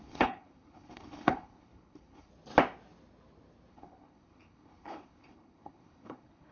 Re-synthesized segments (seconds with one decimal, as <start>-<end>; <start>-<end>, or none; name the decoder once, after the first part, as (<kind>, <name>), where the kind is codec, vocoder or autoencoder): 0.0-2.3 (codec, HILCodec); 3.7-6.5